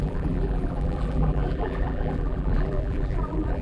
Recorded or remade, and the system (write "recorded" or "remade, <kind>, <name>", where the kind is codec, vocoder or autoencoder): remade, vocoder, BigVGAN v2